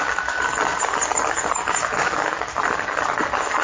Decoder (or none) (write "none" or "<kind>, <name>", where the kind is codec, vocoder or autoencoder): none